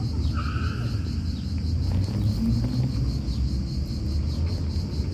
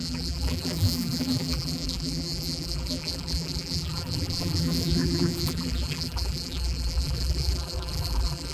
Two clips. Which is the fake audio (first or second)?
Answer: second